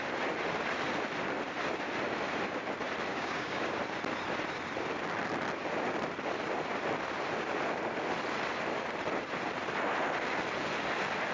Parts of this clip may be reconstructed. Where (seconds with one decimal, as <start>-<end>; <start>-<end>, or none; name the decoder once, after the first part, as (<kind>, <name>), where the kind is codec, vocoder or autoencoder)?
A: 3.1-3.8 (codec, DAC)